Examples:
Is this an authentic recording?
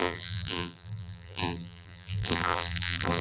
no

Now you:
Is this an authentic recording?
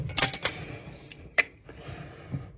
yes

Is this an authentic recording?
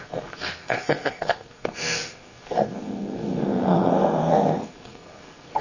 no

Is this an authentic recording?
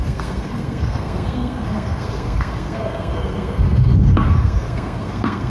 no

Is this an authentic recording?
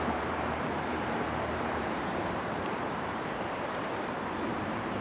no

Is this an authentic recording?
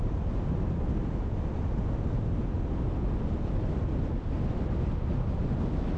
yes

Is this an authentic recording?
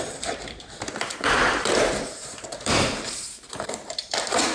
no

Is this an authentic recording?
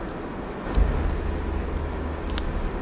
yes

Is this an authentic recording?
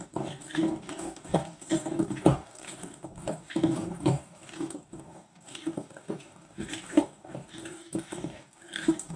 no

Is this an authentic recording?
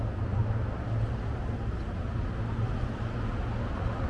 yes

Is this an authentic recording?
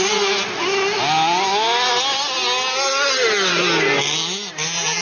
yes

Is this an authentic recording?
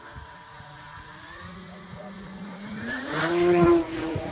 no